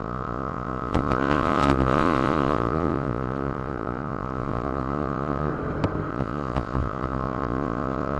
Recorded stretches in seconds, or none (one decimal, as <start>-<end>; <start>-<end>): 5.5-6.1